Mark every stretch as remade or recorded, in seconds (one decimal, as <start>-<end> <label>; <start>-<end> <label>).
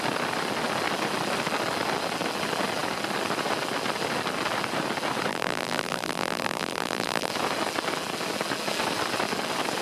0.0-5.3 recorded; 5.3-7.3 remade; 7.3-9.8 recorded